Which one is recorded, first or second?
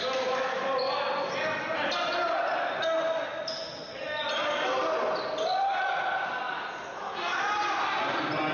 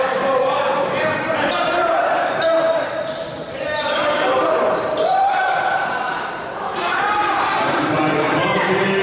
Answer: first